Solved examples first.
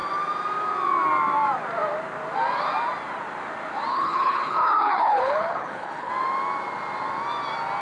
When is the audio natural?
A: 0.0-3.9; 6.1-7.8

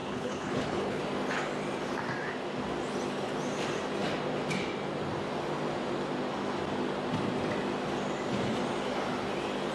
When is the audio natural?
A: 1.0-9.7

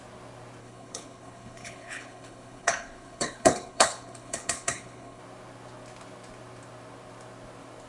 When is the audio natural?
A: 0.0-0.6; 5.2-7.9

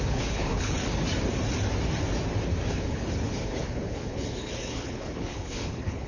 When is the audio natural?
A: 0.8-2.7

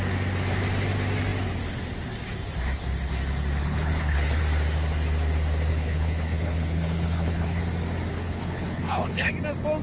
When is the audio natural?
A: 0.0-3.6; 4.4-5.7; 7.6-8.1; 9.3-9.8

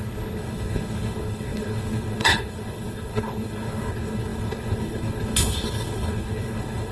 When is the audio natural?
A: none

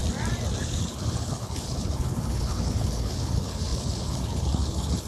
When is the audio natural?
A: 0.0-0.6